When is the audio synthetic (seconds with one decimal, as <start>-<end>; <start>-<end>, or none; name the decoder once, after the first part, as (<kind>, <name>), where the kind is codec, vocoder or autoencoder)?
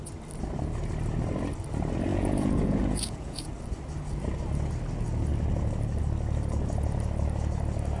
2.1-3.5 (vocoder, Vocos)